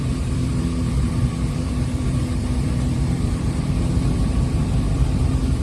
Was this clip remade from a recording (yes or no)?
yes